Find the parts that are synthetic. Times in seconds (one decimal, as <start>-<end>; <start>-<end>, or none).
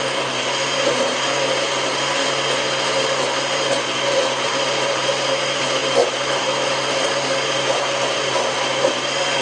none